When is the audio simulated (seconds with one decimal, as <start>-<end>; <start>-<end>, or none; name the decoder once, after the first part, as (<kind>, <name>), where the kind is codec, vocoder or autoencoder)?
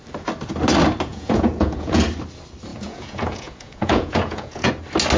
1.1-2.0 (vocoder, Vocos); 2.7-4.7